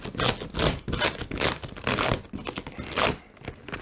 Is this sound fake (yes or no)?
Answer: no